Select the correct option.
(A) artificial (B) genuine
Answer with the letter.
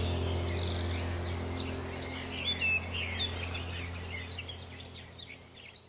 B